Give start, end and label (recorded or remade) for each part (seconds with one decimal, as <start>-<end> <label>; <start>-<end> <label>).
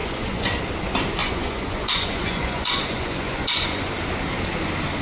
0.0-0.6 remade; 0.6-1.2 recorded; 1.2-3.9 remade; 3.9-5.0 recorded